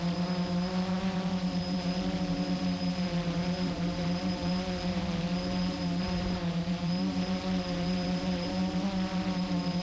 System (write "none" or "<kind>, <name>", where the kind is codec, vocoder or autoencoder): vocoder, BigVGAN v2